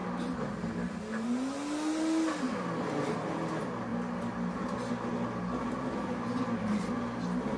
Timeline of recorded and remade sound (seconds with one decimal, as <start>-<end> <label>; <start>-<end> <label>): 0.0-7.6 recorded